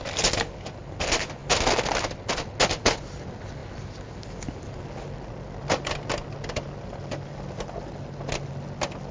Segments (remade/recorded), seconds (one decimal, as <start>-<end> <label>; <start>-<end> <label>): 0.0-9.1 recorded